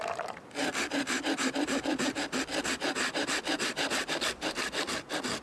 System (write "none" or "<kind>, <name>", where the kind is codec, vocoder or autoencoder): none